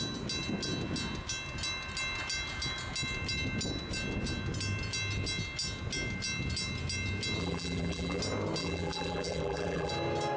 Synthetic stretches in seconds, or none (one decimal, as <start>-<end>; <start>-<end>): 7.4-8.2; 8.6-9.9

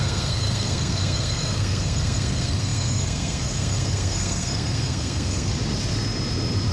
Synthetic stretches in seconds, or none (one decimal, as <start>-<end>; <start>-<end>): 0.0-5.5

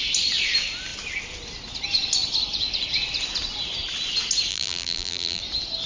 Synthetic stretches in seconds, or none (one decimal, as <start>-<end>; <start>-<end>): 4.5-5.4

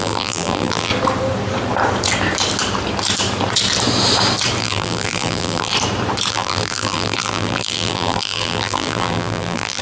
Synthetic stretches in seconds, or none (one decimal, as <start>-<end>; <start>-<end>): 0.0-0.9; 4.6-5.7; 6.3-9.8

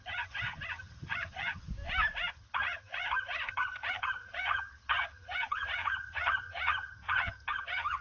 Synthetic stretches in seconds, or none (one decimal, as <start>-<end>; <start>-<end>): 0.0-1.7; 2.3-8.0

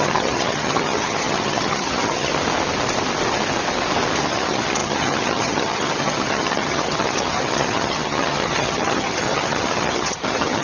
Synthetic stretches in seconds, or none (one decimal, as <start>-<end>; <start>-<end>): 0.0-2.3; 4.2-10.6

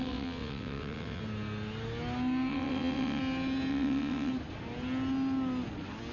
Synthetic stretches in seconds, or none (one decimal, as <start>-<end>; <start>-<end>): 0.0-1.2; 2.5-3.2; 3.7-4.3